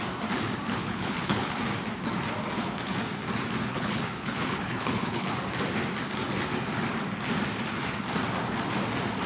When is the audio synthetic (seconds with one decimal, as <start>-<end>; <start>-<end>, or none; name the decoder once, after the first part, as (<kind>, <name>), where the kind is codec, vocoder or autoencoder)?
0.8-1.6 (codec, HILCodec); 3.7-5.3